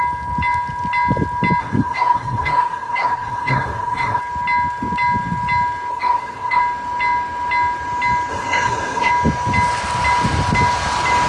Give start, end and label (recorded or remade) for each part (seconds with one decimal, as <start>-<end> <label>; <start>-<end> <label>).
0.0-1.6 recorded; 1.6-4.2 remade; 4.2-5.9 recorded; 5.9-6.6 remade; 6.6-8.3 recorded; 8.3-9.1 remade; 9.1-11.3 recorded